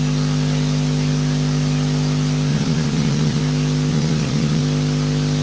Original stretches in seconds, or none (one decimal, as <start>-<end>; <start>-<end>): 0.0-2.5; 3.4-3.9; 4.6-5.4